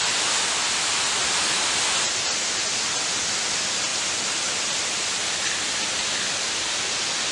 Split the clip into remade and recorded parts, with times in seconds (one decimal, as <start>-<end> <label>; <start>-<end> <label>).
0.0-7.3 recorded